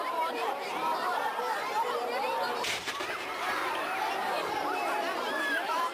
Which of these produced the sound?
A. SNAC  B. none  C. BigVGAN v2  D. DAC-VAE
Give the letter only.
C